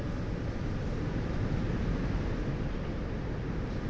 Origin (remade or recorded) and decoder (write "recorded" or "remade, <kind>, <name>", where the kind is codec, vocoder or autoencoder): recorded